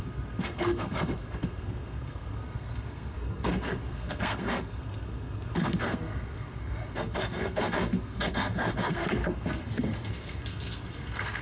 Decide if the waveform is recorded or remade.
remade